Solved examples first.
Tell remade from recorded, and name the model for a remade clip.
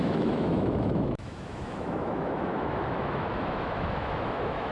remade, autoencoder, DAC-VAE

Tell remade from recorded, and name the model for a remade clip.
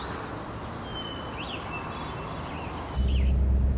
recorded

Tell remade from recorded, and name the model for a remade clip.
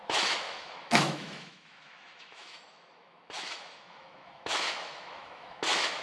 remade, autoencoder, DAC-VAE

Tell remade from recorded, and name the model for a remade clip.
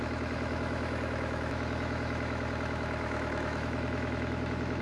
remade, autoencoder, DAC-VAE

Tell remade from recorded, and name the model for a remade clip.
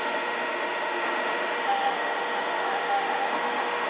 remade, autoencoder, DAC-VAE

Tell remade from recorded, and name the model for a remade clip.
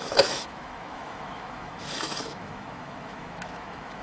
remade, autoencoder, DAC-VAE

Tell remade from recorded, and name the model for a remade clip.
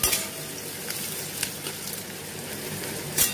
recorded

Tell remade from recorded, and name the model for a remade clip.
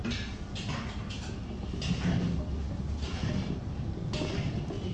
recorded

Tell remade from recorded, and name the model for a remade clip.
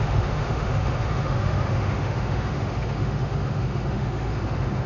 remade, autoencoder, DAC-VAE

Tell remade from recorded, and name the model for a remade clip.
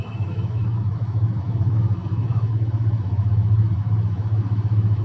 remade, autoencoder, DAC-VAE